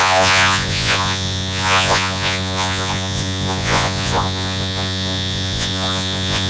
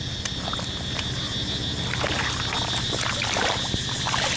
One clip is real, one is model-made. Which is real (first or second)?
second